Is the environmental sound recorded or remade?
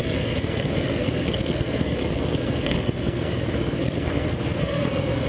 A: remade